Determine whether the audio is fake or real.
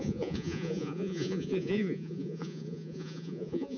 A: fake